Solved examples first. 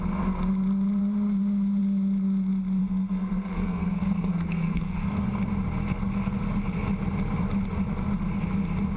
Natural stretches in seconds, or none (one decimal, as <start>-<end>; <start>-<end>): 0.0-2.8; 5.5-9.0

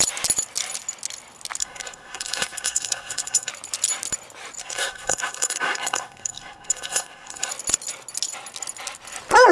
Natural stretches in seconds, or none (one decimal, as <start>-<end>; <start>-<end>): 0.0-1.6; 3.5-4.6; 7.5-9.5

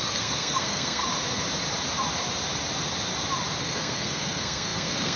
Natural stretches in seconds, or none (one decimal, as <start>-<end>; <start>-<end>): 1.0-3.6